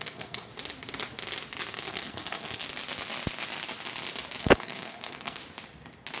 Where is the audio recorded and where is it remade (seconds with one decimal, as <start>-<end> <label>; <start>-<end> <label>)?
0.0-0.5 remade; 0.5-1.7 recorded; 1.7-2.6 remade; 2.6-4.4 recorded; 4.4-5.4 remade; 5.4-6.2 recorded